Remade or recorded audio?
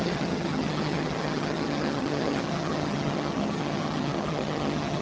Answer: remade